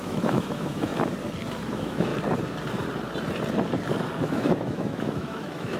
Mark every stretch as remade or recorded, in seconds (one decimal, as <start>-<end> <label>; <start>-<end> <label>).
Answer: 0.0-0.9 remade; 0.9-1.7 recorded; 1.7-2.1 remade; 2.1-4.2 recorded; 4.2-5.8 remade